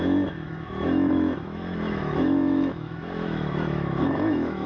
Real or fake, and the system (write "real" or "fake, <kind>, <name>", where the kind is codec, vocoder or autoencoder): fake, autoencoder, DAC-VAE